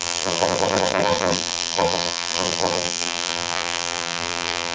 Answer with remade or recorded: remade